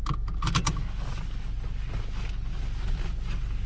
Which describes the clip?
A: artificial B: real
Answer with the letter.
B